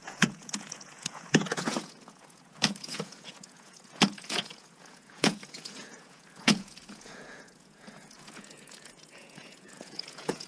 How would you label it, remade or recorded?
remade